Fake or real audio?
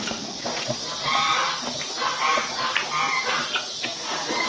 real